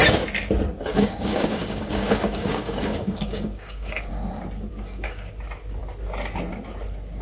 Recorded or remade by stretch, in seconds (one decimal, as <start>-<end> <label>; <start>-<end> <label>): 0.0-0.9 recorded; 0.9-4.1 remade; 4.1-4.7 recorded; 4.7-5.3 remade; 5.3-7.2 recorded